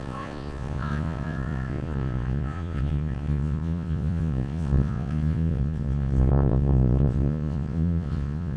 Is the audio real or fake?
fake